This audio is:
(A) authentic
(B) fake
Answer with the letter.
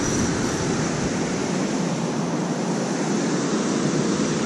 A